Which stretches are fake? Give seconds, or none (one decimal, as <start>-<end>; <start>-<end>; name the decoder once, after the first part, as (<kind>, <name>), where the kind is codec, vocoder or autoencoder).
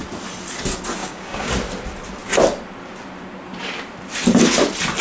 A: 1.0-1.5 (codec, DAC)